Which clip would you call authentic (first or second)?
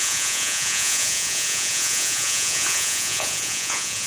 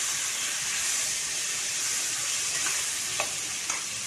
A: second